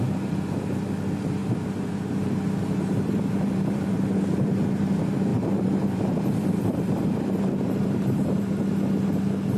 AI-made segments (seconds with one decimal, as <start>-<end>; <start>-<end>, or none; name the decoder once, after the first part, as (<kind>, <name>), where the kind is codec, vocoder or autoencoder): 1.4-3.8 (vocoder, BigVGAN v2); 5.3-8.4